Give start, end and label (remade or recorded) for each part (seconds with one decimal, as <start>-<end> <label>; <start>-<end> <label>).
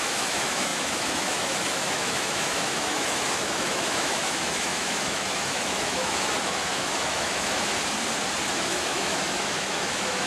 0.0-7.7 remade; 7.7-8.5 recorded; 8.5-10.3 remade